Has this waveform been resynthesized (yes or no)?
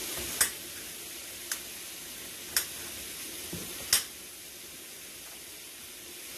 no